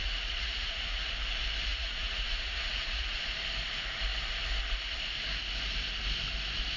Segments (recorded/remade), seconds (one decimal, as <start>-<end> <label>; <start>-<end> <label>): 0.0-1.1 remade; 1.1-1.7 recorded; 1.7-3.2 remade; 3.2-6.8 recorded